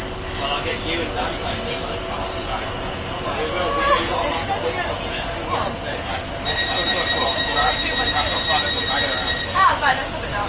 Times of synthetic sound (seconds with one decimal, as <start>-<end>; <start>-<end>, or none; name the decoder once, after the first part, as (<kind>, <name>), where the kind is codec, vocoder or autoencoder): 2.4-4.7 (vocoder, Vocos)